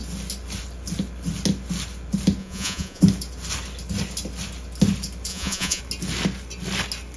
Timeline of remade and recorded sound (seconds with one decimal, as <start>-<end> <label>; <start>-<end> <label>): 0.0-2.4 recorded; 2.4-3.0 remade; 3.0-5.3 recorded; 5.3-5.8 remade; 5.8-7.2 recorded